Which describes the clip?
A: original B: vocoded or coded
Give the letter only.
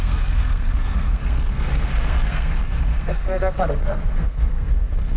B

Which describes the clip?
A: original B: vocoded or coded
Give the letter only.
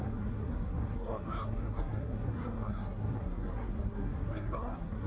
B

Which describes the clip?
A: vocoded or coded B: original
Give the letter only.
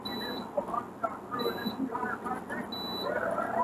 B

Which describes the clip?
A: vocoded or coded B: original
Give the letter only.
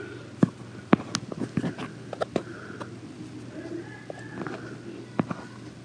B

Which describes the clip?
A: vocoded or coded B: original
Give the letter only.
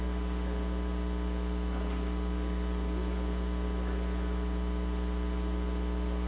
B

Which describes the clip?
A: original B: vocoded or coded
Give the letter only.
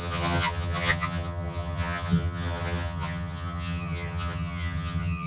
B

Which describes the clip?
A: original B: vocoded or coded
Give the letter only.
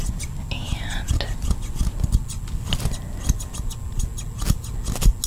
A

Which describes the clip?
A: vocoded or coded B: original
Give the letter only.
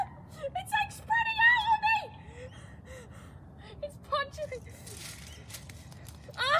B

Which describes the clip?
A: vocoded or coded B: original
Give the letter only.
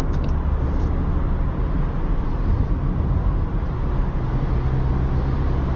B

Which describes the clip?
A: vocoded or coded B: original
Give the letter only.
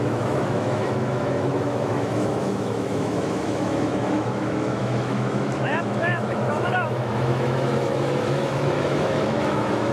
A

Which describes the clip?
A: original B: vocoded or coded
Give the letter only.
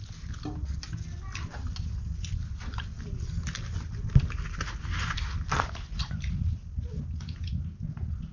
A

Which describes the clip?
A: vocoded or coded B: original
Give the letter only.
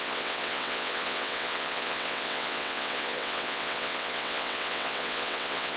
A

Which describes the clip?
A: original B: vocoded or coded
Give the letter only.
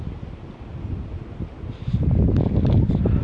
A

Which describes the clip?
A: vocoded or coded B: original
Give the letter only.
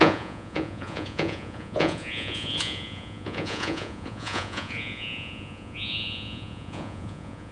A